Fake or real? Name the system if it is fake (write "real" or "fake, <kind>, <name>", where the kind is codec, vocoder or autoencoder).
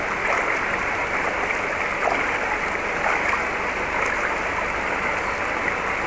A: real